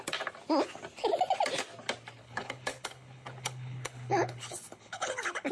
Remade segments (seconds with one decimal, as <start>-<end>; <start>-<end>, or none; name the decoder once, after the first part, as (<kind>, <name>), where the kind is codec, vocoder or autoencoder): 2.2-5.5 (codec, HILCodec)